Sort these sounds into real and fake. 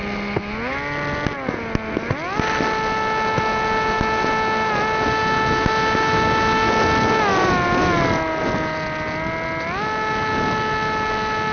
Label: real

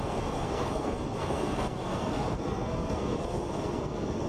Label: fake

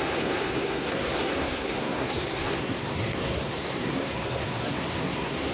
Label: fake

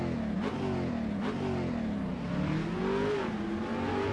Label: real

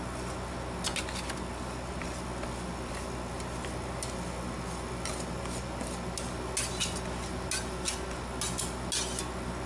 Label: real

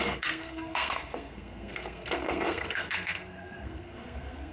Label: fake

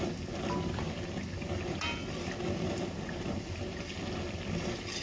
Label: real